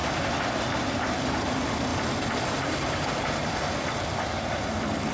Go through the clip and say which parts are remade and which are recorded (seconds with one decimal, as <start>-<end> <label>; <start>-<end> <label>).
0.0-1.9 recorded; 1.9-5.1 remade